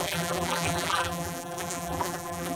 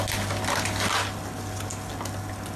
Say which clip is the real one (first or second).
second